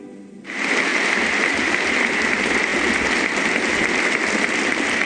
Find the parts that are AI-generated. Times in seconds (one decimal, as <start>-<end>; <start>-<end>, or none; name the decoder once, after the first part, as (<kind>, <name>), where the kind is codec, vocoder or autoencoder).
none